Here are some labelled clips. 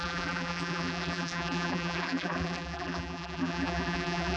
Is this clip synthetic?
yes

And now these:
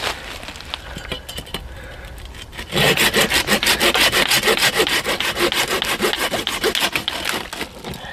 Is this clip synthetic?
no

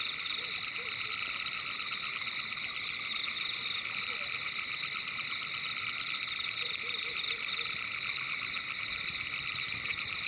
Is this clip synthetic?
no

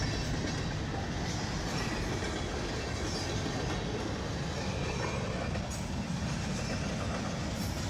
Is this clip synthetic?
no